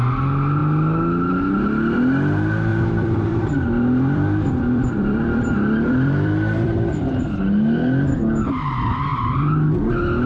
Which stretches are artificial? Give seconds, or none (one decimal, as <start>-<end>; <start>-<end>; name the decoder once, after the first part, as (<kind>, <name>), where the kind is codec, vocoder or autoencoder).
2.7-7.2 (vocoder, BigVGAN v2); 9.1-9.9